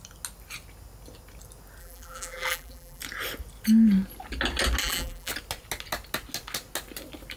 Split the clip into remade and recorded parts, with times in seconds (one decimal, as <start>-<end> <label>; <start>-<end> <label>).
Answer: 0.0-1.8 recorded; 1.8-3.0 remade; 3.0-4.8 recorded; 4.8-5.3 remade; 5.3-7.4 recorded